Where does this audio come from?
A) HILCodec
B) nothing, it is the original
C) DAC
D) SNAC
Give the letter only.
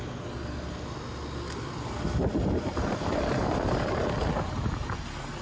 B